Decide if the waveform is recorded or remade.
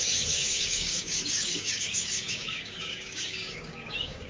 remade